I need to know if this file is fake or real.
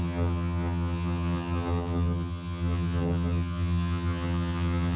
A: fake